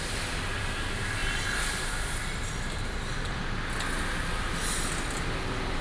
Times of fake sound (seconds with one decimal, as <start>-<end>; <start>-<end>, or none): 1.2-3.4